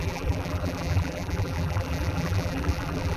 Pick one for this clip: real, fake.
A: fake